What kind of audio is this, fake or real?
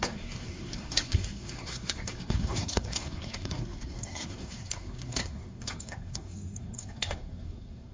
fake